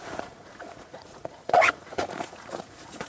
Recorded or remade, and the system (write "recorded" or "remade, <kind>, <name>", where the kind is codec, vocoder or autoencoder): remade, vocoder, Vocos